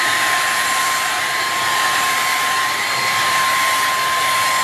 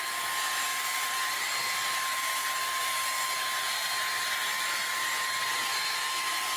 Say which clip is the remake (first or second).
first